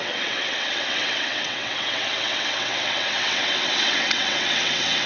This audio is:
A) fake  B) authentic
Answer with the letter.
A